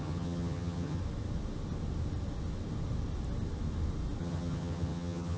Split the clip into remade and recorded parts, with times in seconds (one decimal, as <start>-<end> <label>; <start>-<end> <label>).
0.0-1.0 remade; 1.0-4.2 recorded; 4.2-5.4 remade